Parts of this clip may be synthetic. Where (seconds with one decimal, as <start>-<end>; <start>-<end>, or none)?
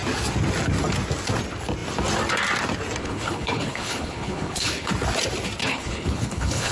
3.0-4.9; 5.6-6.7